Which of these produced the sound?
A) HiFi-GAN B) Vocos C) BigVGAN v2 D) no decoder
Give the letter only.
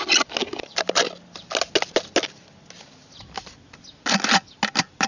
D